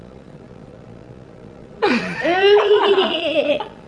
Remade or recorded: remade